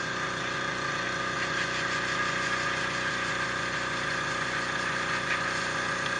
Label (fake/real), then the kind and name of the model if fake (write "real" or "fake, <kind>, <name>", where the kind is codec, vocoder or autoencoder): fake, vocoder, Vocos